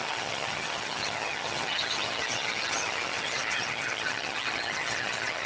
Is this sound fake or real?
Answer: fake